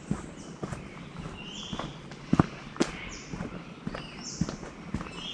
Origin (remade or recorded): recorded